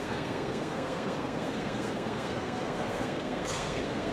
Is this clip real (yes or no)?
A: no